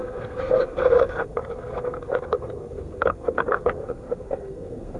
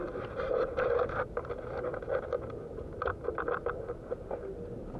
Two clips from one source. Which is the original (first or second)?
second